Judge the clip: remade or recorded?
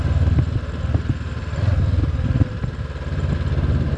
recorded